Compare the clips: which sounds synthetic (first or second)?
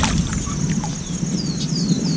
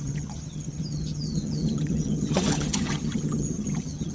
second